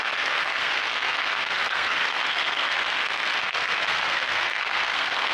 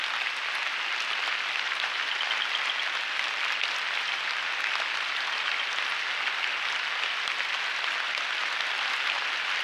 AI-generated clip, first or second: first